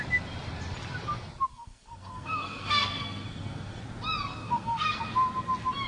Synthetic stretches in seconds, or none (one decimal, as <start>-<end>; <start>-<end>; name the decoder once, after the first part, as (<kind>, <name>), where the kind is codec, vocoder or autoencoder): 1.5-3.8 (codec, SNAC); 4.3-5.0